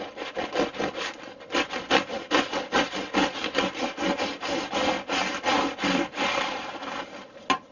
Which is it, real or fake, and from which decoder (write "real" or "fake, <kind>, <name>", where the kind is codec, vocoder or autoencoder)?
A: real